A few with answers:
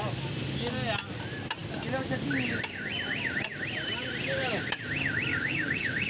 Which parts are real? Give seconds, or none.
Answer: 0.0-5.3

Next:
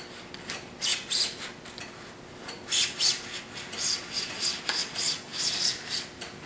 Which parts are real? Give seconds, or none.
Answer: 0.0-6.5

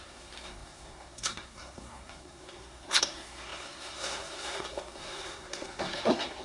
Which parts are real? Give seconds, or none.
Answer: none